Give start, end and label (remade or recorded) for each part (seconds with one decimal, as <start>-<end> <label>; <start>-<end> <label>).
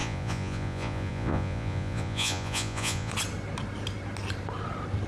0.0-3.1 remade; 3.1-5.1 recorded